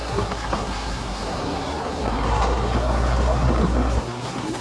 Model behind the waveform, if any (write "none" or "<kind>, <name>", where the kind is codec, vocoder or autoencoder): codec, SNAC